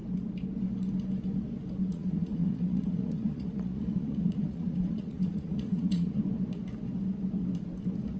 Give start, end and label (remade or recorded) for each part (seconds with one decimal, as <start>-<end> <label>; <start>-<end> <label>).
0.0-1.9 recorded; 1.9-6.2 remade; 6.2-8.2 recorded